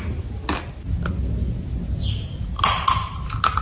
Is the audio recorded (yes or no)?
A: yes